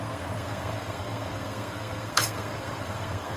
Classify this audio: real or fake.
fake